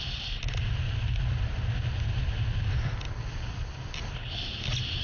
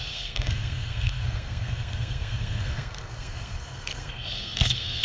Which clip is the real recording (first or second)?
first